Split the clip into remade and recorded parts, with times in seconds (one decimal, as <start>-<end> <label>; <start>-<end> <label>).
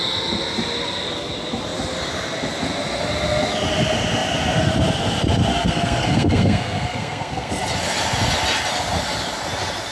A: 0.0-5.5 recorded; 5.5-7.5 remade; 7.5-9.9 recorded